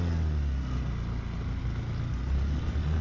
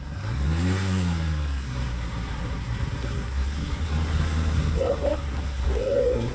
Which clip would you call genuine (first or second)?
first